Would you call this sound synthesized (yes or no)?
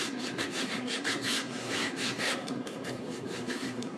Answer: yes